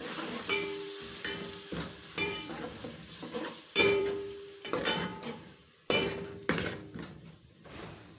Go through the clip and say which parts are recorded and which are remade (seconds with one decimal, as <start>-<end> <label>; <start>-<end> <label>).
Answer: 0.0-8.2 remade